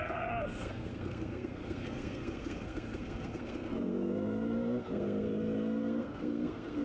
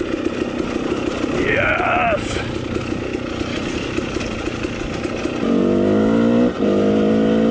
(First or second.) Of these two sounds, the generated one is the first